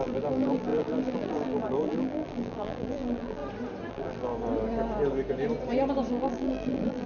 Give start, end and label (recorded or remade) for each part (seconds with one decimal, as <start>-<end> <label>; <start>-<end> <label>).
0.0-3.4 remade; 3.4-3.9 recorded; 3.9-4.3 remade; 4.3-6.1 recorded; 6.1-7.1 remade